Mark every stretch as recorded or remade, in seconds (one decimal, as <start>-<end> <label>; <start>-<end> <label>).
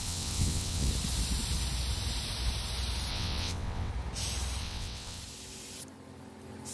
0.0-0.9 remade; 0.9-3.1 recorded; 3.1-3.9 remade; 3.9-4.6 recorded; 4.6-5.2 remade; 5.2-6.7 recorded